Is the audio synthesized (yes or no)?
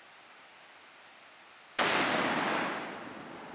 no